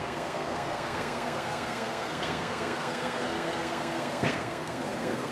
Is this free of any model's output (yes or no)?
no